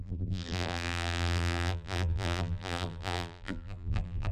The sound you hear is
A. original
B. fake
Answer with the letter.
B